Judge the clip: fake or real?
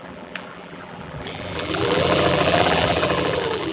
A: fake